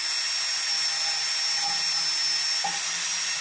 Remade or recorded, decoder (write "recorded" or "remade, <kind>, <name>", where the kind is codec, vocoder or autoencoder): recorded